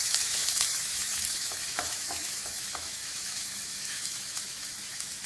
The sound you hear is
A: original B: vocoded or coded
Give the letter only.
B